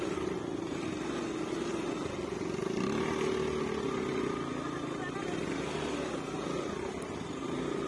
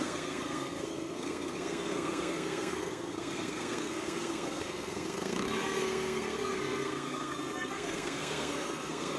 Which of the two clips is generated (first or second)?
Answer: second